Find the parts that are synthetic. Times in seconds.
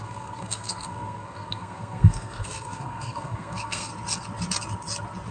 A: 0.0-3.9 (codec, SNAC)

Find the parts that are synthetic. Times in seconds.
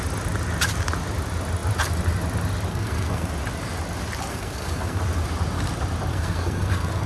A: 2.7-3.3 (codec, SNAC); 4.3-5.0; 6.1-7.1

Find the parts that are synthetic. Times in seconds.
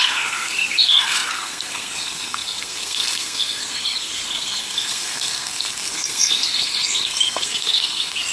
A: 0.0-8.3 (codec, SNAC)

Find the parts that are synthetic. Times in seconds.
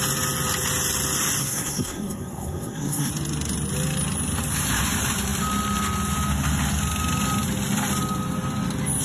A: 1.4-3.1 (codec, SNAC)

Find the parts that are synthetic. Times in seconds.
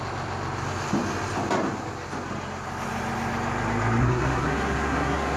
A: 4.0-5.4 (codec, SNAC)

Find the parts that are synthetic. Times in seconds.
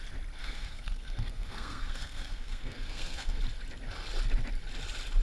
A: 0.4-3.4 (codec, SNAC)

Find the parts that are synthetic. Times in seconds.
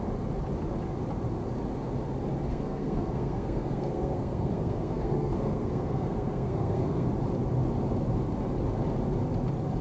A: 2.5-7.1 (codec, SNAC)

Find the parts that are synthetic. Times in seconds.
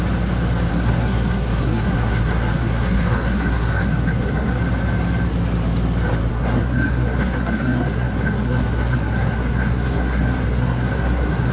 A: 0.7-4.6 (codec, SNAC); 6.3-11.5